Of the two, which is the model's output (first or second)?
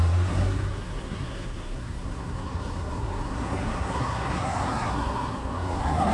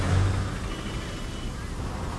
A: first